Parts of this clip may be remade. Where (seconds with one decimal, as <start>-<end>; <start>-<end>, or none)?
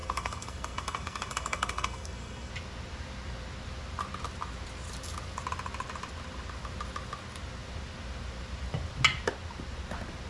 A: 0.0-2.5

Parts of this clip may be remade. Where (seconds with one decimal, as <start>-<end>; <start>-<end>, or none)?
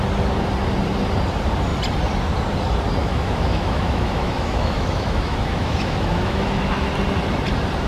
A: 3.0-6.9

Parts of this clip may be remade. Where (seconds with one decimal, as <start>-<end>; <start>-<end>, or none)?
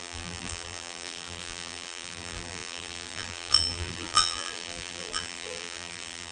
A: 0.0-6.3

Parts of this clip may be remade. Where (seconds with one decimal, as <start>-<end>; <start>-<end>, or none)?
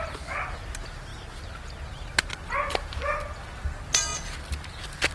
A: none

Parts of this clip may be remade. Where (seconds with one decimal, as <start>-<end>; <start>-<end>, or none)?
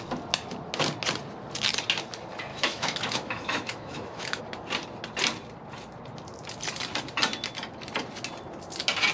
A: 2.5-4.4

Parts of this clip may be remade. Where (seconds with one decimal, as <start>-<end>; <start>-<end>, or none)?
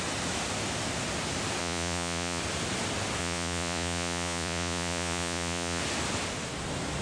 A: 1.6-2.4; 3.2-5.8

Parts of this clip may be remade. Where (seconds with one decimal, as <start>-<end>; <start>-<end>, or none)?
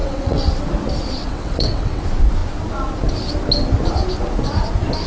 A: 0.0-0.5; 1.2-2.0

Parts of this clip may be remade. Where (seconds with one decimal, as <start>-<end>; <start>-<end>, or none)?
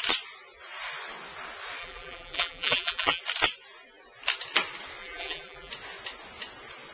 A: 1.8-3.2; 5.0-5.7